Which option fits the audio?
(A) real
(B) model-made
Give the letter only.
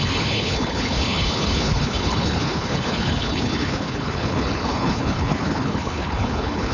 B